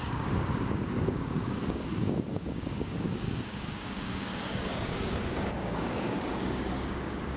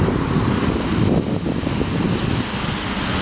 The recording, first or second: second